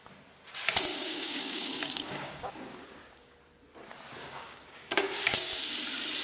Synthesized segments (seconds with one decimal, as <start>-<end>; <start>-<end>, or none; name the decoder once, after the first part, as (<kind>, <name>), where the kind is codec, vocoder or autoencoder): 0.9-3.4 (codec, DAC); 4.2-5.6